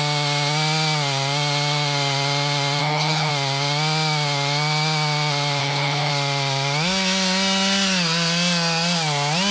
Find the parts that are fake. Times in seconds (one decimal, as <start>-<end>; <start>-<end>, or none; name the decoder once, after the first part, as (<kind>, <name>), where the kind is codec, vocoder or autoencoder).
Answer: 2.8-3.3 (codec, HILCodec); 5.6-6.1